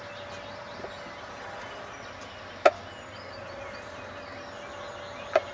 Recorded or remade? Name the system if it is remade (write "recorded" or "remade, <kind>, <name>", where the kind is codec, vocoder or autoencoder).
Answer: recorded